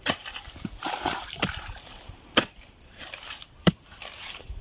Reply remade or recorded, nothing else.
remade